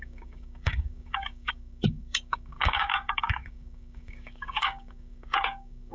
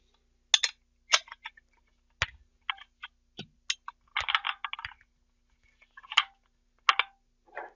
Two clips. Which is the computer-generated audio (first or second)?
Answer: first